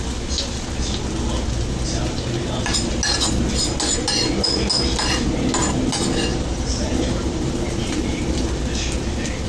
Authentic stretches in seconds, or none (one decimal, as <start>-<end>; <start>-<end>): 0.0-6.3; 8.2-9.5